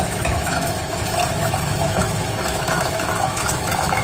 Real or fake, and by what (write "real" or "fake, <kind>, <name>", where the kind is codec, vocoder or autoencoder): fake, autoencoder, DAC-VAE